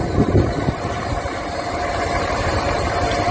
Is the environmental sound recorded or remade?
remade